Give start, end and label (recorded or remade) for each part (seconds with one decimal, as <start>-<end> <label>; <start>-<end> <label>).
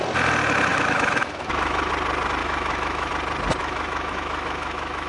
0.0-0.7 recorded; 0.7-1.9 remade; 1.9-2.4 recorded; 2.4-3.1 remade; 3.1-3.6 recorded; 3.6-5.1 remade